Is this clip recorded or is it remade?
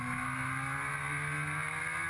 recorded